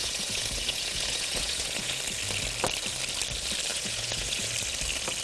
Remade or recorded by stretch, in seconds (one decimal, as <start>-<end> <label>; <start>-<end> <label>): 0.0-2.0 remade; 2.0-3.7 recorded; 3.7-4.5 remade; 4.5-5.2 recorded